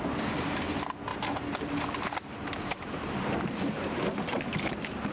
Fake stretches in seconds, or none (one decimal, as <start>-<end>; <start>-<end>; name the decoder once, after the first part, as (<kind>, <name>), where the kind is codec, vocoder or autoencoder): none